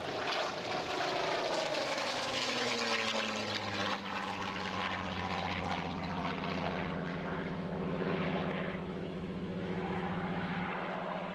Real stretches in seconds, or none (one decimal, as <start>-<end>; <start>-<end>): 0.0-1.7; 2.7-7.1; 10.6-11.3